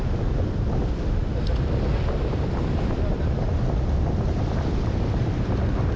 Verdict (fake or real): real